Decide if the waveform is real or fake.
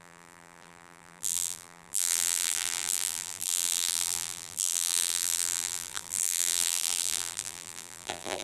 fake